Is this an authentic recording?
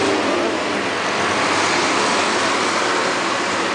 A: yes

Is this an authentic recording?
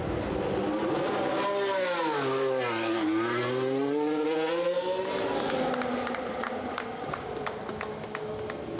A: yes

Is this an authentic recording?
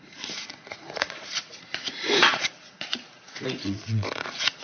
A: no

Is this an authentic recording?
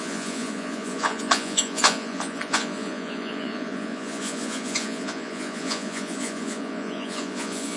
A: no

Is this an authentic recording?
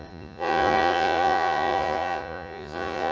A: no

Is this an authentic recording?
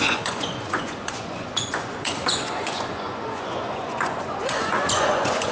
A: no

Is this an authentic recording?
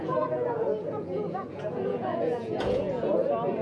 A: no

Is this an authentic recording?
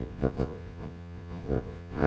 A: no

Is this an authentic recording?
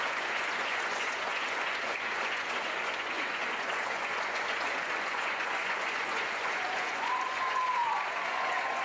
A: no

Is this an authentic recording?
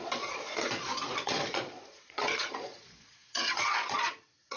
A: no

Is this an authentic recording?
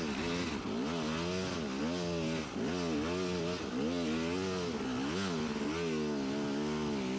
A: yes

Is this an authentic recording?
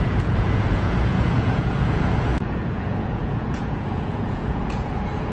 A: no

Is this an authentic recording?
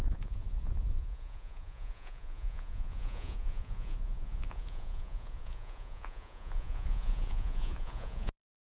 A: no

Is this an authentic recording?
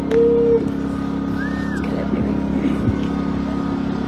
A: yes